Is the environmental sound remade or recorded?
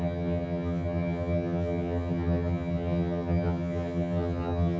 remade